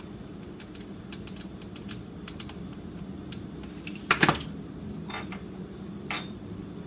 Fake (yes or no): no